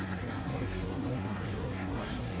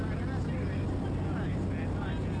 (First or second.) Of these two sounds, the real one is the second